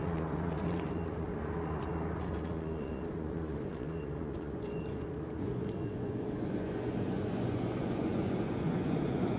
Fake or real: fake